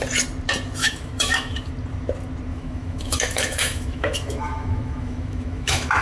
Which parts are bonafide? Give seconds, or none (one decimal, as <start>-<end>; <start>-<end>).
0.0-0.8; 1.7-2.5